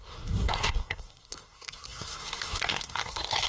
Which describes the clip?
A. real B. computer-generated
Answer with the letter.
B